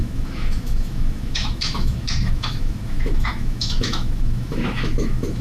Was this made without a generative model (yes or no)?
no